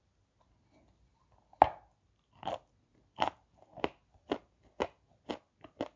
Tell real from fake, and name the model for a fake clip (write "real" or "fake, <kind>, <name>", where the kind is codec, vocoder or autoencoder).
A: real